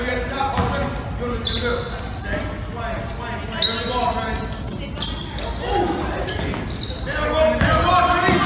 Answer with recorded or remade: recorded